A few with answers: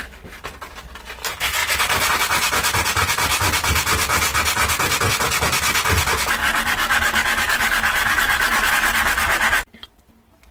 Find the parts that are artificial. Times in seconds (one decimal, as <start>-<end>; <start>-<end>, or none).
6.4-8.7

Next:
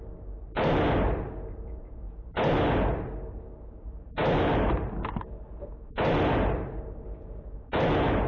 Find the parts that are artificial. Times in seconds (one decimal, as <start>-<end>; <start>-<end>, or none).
none

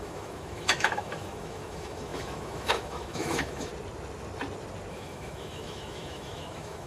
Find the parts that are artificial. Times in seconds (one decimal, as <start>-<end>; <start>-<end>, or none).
0.0-3.7; 4.9-6.9